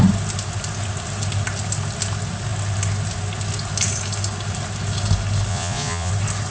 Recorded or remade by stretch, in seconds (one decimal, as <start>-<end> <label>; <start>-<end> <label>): 0.0-5.5 recorded; 5.5-6.1 remade; 6.1-6.5 recorded